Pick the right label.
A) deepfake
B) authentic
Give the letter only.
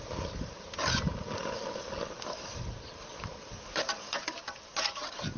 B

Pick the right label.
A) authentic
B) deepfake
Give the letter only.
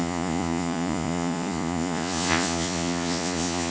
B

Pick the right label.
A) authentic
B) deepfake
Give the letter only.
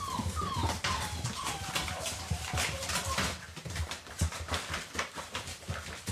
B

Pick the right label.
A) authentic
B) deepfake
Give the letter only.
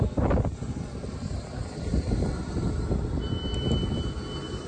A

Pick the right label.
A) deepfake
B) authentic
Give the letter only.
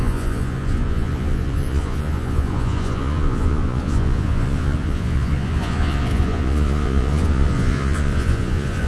A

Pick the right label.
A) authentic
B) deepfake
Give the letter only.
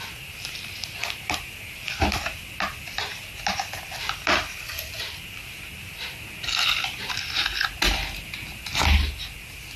A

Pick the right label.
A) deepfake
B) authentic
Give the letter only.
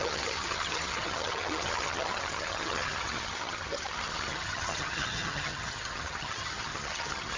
A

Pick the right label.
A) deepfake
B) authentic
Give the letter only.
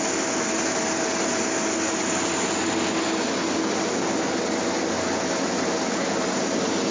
B